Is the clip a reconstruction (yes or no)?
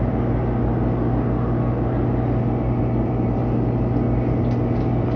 no